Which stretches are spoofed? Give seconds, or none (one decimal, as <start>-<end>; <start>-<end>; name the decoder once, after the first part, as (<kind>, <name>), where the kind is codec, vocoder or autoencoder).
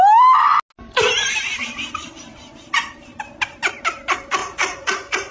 4.4-5.3 (vocoder, Vocos)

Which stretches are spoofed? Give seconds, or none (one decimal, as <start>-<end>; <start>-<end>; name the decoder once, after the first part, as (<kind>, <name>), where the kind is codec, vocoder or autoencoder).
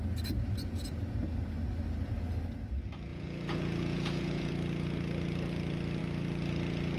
3.1-4.5 (vocoder, Vocos)